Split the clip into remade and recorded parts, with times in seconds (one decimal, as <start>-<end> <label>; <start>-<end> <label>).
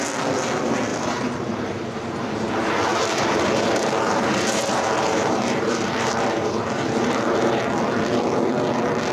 0.0-0.9 recorded; 0.9-2.3 remade; 2.3-2.9 recorded; 2.9-7.6 remade; 7.6-9.1 recorded